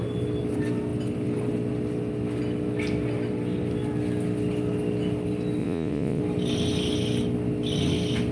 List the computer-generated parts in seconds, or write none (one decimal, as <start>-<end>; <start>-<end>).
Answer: 5.6-6.2